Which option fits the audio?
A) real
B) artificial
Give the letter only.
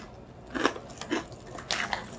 A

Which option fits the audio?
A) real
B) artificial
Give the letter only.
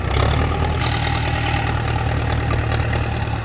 A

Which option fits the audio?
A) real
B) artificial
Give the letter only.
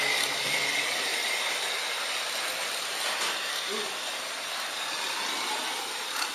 A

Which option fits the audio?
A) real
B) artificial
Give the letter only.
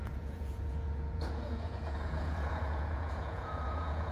B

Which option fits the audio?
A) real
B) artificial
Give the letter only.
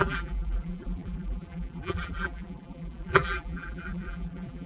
B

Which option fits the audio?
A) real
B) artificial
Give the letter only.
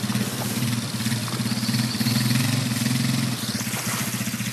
A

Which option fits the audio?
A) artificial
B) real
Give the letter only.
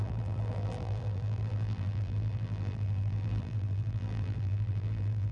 A